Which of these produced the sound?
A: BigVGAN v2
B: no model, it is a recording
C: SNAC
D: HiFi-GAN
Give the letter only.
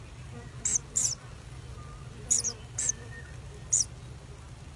B